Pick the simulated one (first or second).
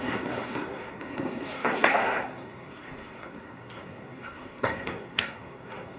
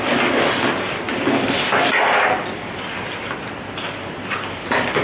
first